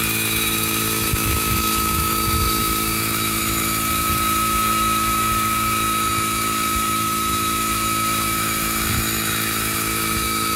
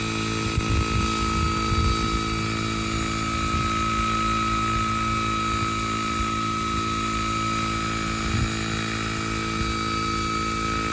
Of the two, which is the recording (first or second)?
second